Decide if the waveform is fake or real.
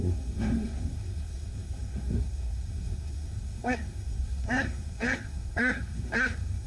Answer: fake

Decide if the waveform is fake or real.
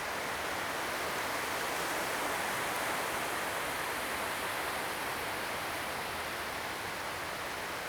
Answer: real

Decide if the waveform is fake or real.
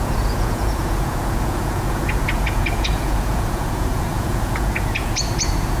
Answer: fake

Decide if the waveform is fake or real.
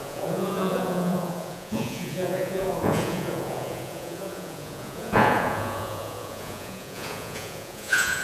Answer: fake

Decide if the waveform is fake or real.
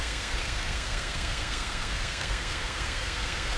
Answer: fake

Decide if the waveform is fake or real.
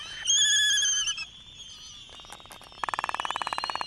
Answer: real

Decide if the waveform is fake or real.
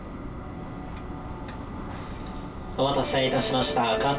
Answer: real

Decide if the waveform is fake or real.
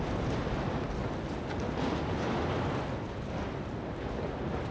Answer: real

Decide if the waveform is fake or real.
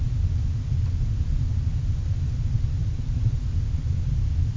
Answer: real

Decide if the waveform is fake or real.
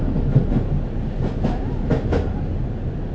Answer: real